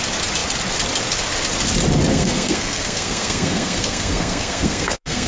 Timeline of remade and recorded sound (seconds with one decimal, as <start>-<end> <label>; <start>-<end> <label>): 0.0-2.1 recorded; 2.1-5.3 remade